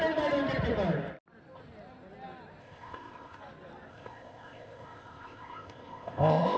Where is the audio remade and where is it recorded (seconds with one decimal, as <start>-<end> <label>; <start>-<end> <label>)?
0.0-2.6 recorded; 2.6-3.4 remade; 3.4-3.9 recorded; 3.9-6.6 remade